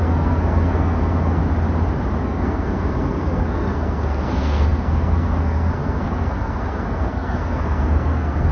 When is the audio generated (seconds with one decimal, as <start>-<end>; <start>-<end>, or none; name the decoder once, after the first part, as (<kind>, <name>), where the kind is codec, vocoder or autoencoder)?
0.0-1.4 (codec, SNAC); 2.2-8.5